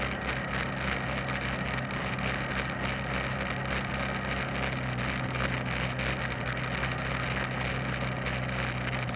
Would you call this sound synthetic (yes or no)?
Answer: no